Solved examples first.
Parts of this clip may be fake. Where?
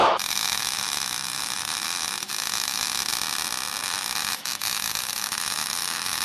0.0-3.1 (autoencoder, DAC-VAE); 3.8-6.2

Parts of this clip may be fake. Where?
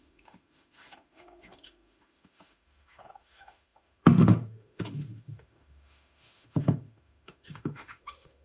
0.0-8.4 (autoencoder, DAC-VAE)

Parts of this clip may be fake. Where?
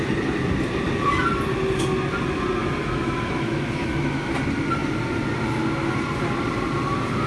2.6-4.3 (autoencoder, DAC-VAE)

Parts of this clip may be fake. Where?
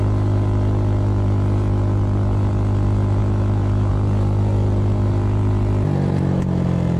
3.2-3.9 (autoencoder, DAC-VAE)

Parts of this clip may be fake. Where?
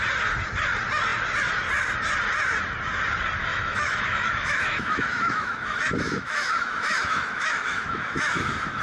3.5-8.8 (autoencoder, DAC-VAE)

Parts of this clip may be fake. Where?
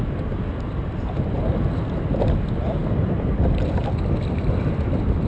none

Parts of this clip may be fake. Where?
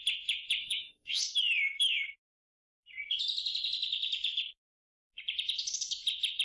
0.6-1.2 (autoencoder, DAC-VAE)